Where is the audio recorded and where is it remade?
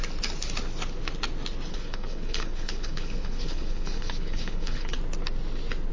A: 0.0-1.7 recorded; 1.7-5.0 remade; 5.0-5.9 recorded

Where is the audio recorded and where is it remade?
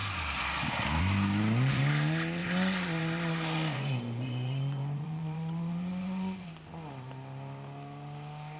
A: 0.0-2.4 recorded; 2.4-6.5 remade; 6.5-8.6 recorded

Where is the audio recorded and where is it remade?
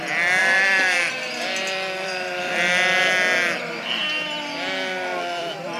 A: 0.0-0.4 recorded; 0.4-2.5 remade; 2.5-5.8 recorded